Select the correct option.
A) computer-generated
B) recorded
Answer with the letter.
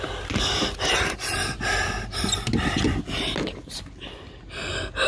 B